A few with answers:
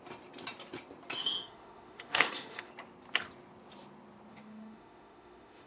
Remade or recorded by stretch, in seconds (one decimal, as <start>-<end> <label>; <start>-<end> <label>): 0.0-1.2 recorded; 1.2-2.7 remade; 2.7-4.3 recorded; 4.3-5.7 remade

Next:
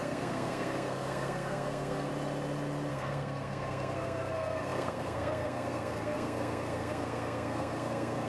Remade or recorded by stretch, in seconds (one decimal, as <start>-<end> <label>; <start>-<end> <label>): 0.0-2.1 remade; 2.1-2.9 recorded; 2.9-8.3 remade

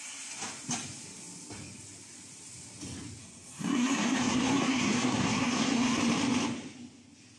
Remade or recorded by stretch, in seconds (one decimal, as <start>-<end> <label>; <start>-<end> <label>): 0.0-3.2 recorded; 3.2-6.0 remade; 6.0-7.4 recorded

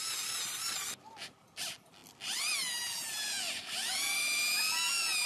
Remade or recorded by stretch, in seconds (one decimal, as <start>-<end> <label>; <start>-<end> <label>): 0.0-5.3 recorded

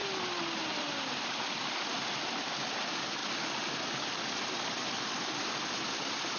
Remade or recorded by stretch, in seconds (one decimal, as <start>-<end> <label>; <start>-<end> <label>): 0.0-6.4 recorded

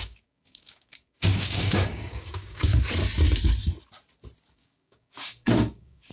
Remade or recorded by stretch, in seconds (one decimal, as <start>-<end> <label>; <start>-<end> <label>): 0.0-2.7 remade; 2.7-4.5 recorded; 4.5-6.1 remade

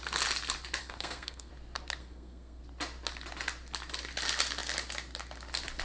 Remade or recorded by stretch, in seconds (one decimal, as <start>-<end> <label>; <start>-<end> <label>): 0.0-0.8 recorded; 0.8-1.5 remade; 1.5-2.0 recorded; 2.0-2.6 remade; 2.6-5.8 recorded

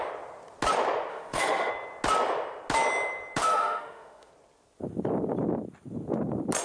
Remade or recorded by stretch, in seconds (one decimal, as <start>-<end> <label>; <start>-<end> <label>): 0.0-1.1 recorded; 1.1-1.7 remade; 1.7-3.4 recorded; 3.4-4.3 remade; 4.3-6.6 recorded